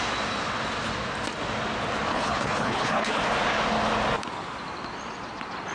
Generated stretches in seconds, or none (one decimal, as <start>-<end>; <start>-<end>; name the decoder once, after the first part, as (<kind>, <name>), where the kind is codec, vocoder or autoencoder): 2.1-3.2 (codec, HILCodec)